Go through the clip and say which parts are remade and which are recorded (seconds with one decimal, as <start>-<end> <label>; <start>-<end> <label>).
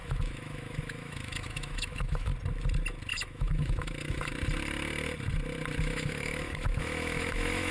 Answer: 0.0-2.3 remade; 2.3-3.1 recorded; 3.1-4.3 remade; 4.3-5.8 recorded; 5.8-7.7 remade